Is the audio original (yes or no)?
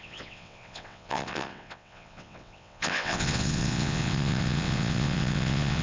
no